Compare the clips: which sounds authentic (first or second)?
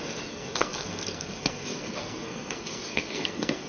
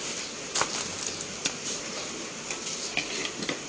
second